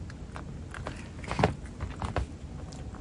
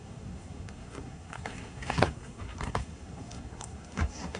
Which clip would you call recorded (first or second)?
first